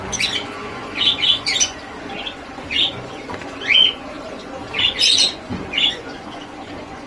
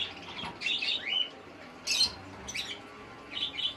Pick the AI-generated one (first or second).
first